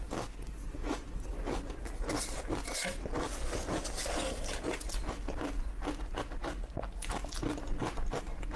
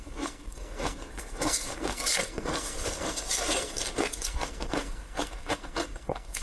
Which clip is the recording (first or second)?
first